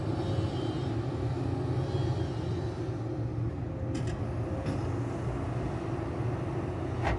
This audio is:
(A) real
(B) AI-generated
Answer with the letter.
A